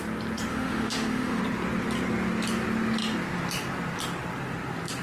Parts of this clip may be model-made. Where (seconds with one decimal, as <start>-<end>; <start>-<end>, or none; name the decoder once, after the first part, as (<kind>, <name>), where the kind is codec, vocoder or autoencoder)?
0.5-1.4 (autoencoder, DAC-VAE)